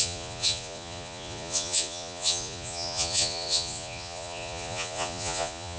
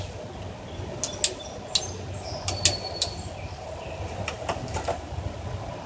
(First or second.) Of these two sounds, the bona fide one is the second